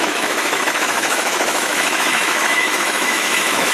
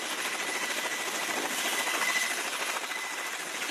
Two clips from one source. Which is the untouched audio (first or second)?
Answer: second